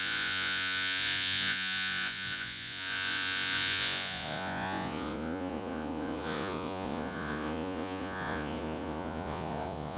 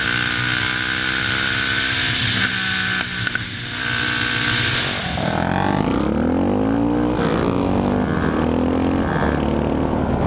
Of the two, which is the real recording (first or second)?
second